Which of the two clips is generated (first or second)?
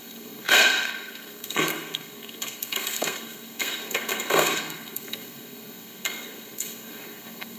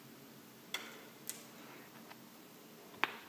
first